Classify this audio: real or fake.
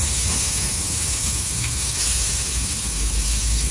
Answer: fake